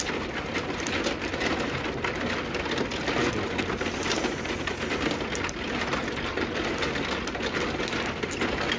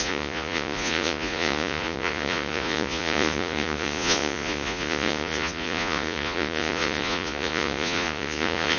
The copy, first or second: second